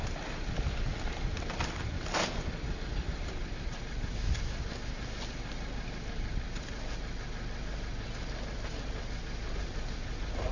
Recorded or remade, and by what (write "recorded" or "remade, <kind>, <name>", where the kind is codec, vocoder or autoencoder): recorded